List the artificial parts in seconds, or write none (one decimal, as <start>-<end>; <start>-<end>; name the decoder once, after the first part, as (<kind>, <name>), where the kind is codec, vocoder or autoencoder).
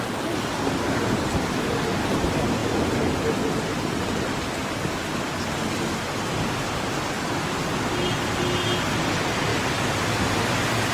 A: none